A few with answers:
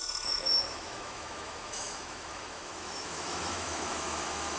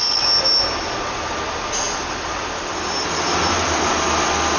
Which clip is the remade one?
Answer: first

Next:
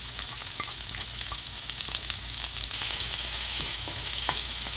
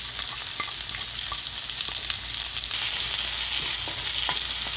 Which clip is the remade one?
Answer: first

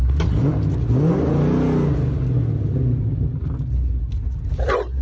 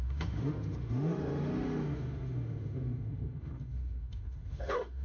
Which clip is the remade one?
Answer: second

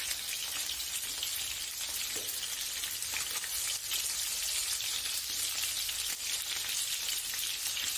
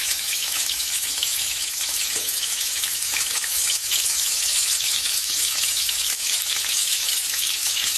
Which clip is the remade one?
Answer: second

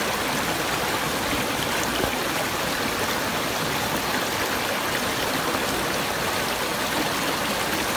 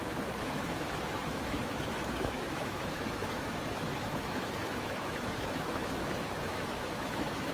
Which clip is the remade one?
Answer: second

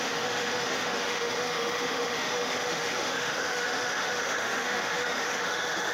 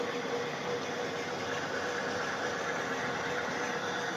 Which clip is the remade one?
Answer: first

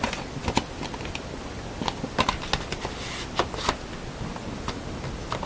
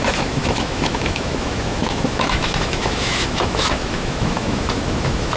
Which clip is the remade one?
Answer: second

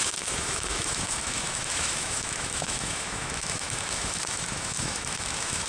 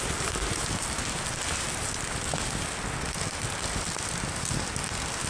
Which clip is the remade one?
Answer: first